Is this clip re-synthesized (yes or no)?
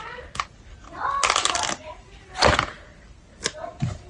no